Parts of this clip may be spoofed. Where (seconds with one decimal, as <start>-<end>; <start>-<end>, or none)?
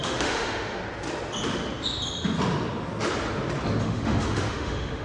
0.0-0.8; 3.8-5.0